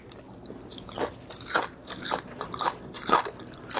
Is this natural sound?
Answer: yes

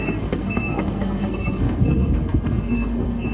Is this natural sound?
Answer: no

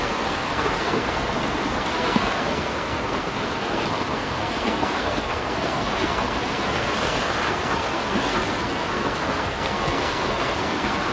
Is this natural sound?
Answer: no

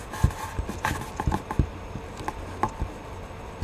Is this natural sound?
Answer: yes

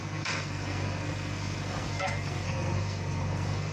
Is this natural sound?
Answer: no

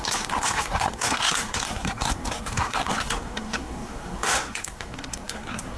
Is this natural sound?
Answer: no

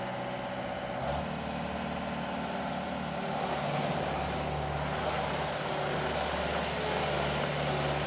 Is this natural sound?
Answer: yes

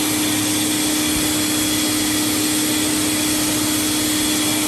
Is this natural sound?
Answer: yes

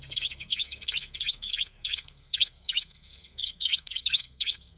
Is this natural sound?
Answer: no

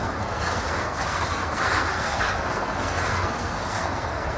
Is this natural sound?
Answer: no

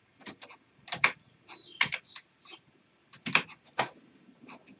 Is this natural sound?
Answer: yes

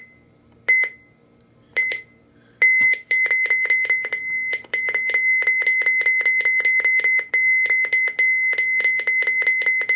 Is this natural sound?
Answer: yes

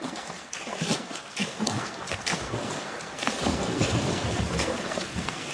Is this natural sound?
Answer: no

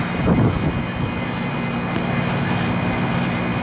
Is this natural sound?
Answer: yes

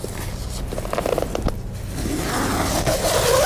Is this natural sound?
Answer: yes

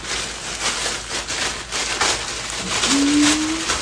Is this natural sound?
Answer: yes